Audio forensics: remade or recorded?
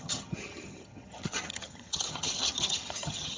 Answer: remade